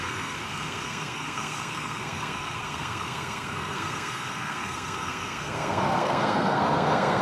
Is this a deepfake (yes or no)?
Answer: yes